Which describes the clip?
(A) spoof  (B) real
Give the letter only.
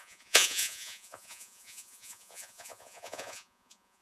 A